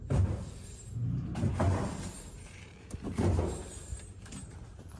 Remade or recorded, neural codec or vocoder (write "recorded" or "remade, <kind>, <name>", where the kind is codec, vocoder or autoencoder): remade, vocoder, BigVGAN v2